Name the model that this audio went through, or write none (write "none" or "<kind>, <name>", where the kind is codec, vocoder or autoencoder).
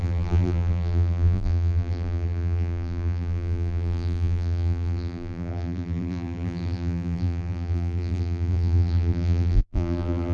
vocoder, BigVGAN v2